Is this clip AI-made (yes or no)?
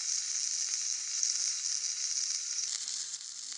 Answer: yes